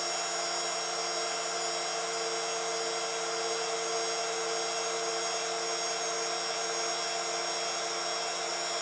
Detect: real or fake real